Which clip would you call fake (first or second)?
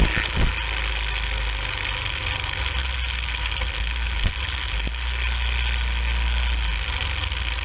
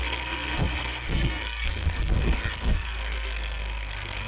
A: second